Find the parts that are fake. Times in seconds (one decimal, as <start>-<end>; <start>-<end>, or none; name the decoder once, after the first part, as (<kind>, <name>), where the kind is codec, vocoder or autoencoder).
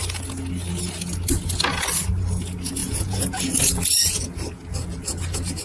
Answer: 2.8-3.4 (vocoder, Vocos)